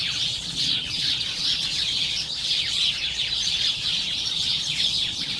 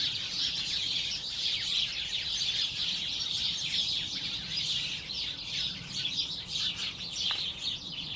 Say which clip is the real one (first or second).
second